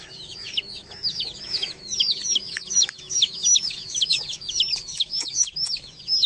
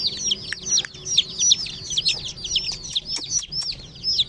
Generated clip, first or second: first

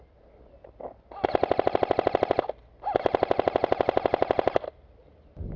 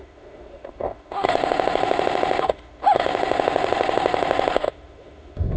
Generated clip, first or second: second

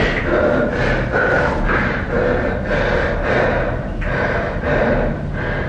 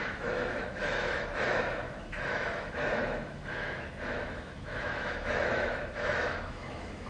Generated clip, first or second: second